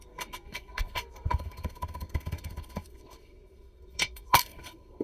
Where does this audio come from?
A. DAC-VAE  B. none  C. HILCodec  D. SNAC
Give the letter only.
D